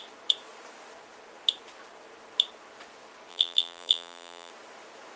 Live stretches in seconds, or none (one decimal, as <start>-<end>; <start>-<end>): 0.0-3.3; 4.5-5.2